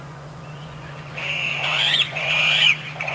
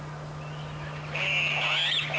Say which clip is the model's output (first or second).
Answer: first